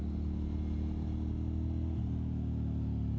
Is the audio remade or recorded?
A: recorded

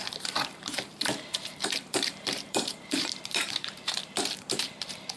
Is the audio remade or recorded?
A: remade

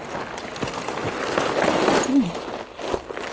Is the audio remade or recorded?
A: recorded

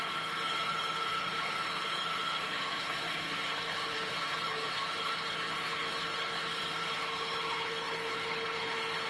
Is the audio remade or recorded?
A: remade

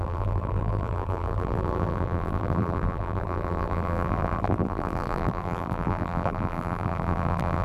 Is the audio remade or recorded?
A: remade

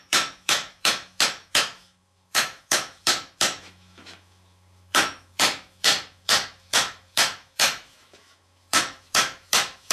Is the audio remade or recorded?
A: remade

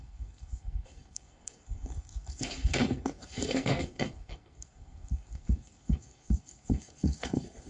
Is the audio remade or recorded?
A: remade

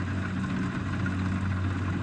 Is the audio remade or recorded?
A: recorded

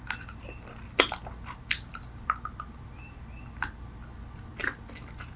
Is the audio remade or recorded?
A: recorded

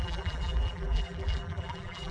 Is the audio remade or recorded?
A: remade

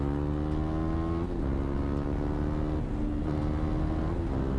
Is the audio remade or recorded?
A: recorded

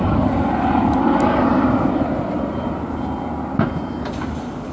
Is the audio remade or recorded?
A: recorded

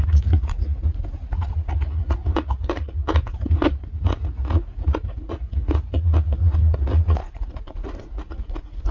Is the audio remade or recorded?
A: remade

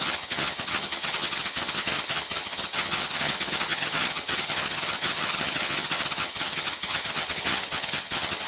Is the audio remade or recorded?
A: remade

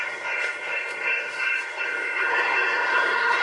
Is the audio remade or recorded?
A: remade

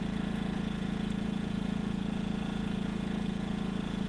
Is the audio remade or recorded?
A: remade